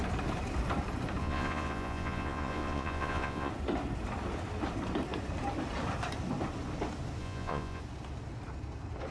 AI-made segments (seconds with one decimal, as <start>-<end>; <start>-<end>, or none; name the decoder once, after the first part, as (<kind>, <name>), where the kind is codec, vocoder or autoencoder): 1.2-3.5 (vocoder, Vocos); 7.2-7.8